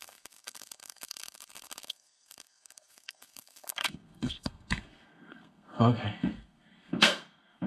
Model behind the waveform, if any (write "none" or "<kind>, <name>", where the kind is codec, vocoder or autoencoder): codec, SNAC